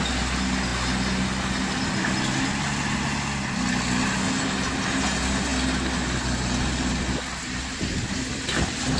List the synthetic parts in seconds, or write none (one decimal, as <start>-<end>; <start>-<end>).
none